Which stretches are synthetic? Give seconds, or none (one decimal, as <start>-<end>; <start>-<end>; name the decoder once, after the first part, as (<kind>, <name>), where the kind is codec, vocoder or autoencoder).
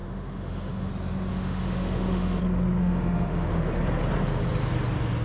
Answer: 0.0-0.9 (autoencoder, DAC-VAE); 1.3-2.4; 2.8-3.7